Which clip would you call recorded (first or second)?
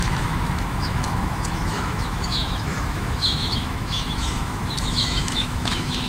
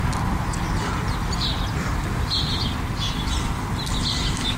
second